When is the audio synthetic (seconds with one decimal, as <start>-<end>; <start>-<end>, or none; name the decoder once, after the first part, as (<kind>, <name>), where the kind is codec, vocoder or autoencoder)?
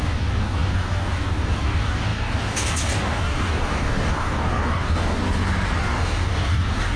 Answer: 0.0-5.2 (codec, DAC); 5.8-7.0